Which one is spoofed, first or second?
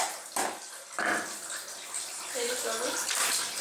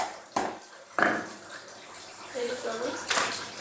second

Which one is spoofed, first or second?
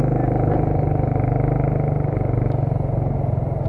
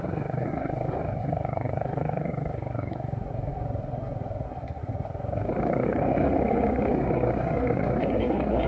second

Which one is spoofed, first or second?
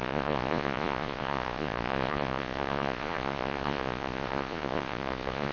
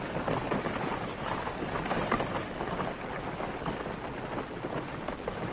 first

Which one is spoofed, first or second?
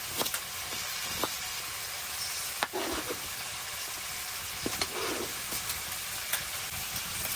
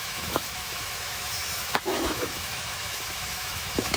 second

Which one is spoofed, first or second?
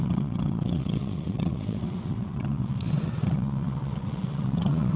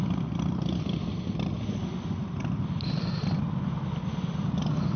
first